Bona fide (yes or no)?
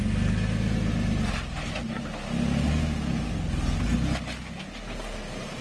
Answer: yes